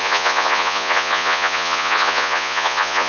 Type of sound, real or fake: fake